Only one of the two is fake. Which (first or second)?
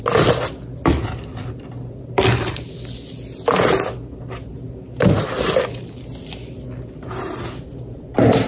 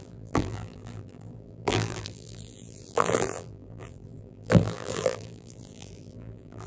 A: second